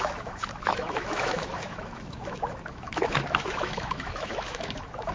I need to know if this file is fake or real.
fake